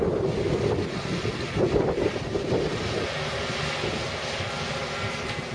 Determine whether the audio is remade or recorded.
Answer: recorded